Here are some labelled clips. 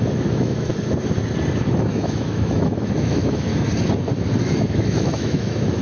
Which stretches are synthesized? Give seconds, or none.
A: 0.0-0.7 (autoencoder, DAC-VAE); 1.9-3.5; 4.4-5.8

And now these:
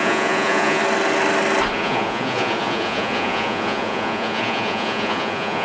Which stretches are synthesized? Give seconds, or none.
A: 0.0-0.8 (vocoder, Vocos); 1.7-5.6

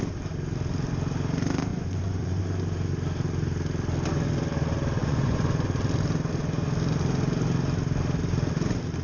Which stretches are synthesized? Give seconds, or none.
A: 1.7-2.4 (vocoder, Vocos); 5.0-5.6

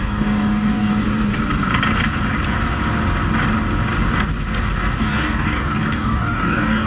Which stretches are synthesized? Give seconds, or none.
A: 0.0-0.9 (codec, DAC); 5.0-6.9

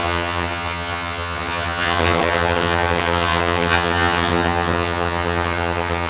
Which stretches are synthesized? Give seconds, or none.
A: 0.0-6.1 (vocoder, HiFi-GAN)